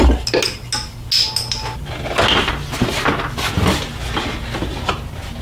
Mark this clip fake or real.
real